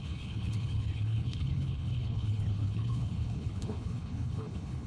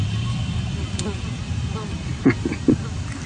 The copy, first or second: first